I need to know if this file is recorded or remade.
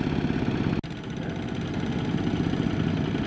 recorded